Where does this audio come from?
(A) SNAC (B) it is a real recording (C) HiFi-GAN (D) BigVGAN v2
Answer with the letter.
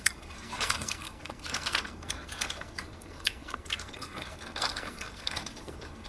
A